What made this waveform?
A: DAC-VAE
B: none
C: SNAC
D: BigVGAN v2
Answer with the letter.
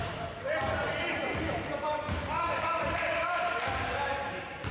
D